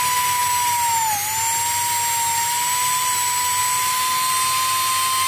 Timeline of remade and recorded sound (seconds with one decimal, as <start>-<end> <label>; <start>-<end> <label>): 0.0-5.3 recorded